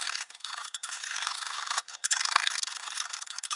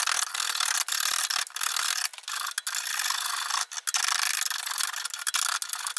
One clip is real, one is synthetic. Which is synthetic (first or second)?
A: first